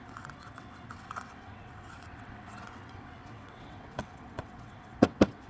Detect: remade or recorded remade